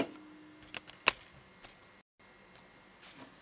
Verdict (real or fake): real